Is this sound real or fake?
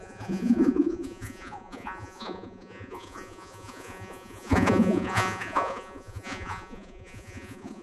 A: fake